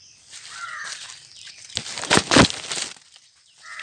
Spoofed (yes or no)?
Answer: no